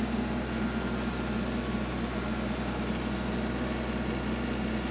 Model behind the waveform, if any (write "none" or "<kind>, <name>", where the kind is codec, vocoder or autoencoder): none